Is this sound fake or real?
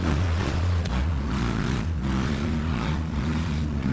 fake